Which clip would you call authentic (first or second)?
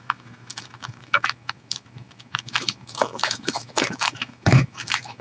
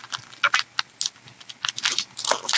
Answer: second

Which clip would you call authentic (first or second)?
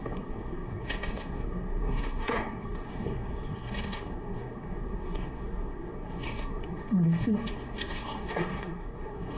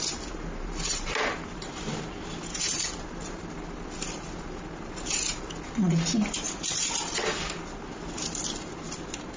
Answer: second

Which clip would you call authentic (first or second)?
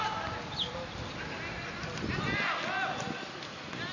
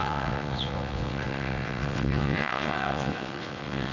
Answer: first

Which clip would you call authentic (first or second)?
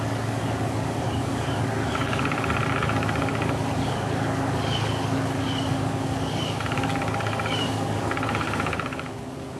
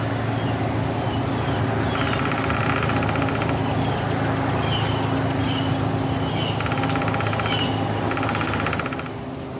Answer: second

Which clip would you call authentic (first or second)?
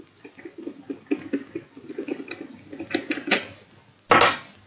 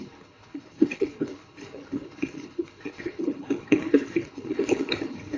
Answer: first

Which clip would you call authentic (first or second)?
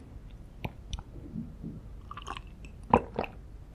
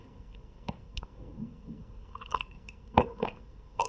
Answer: first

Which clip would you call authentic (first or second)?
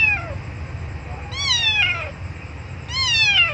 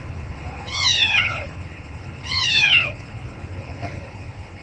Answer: first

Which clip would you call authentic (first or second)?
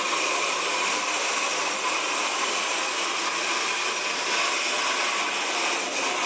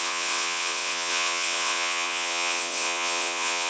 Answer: first